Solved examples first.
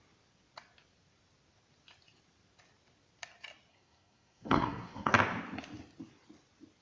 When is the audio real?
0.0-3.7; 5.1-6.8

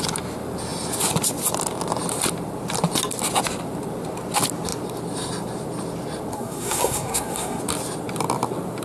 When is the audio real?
0.0-6.3; 7.6-8.8

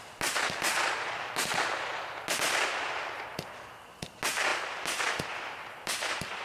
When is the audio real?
0.0-6.4

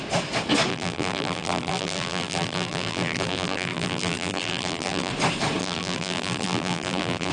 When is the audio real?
0.0-0.7; 5.1-5.6

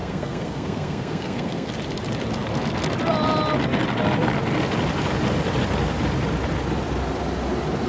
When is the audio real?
1.7-7.9